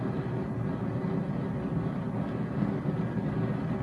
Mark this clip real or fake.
real